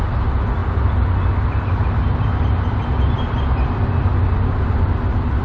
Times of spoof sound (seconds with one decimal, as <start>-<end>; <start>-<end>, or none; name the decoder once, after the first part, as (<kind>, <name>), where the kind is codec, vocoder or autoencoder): none